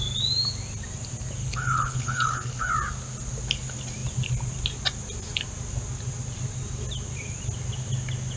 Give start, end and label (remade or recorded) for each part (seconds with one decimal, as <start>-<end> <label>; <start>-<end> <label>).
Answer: 0.0-1.4 recorded; 1.4-2.7 remade; 2.7-8.4 recorded